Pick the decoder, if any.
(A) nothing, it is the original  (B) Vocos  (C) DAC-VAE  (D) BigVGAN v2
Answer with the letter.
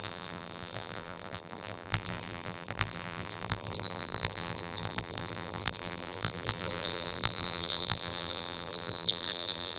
D